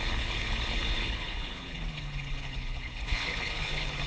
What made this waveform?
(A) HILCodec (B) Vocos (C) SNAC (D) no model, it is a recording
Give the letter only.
A